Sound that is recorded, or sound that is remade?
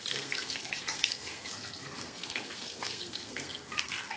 remade